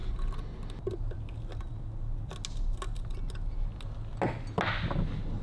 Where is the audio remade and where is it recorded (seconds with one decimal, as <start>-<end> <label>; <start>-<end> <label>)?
0.0-5.4 recorded